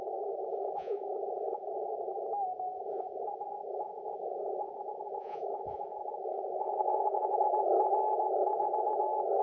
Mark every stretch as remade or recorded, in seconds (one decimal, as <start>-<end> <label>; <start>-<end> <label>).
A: 0.0-0.5 recorded; 0.5-1.7 remade; 1.7-2.7 recorded; 2.7-7.5 remade; 7.5-9.4 recorded